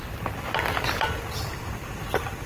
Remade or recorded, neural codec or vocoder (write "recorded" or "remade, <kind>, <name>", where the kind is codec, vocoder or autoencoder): recorded